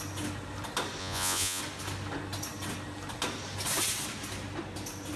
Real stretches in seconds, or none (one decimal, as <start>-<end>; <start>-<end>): 0.0-1.0; 1.6-5.2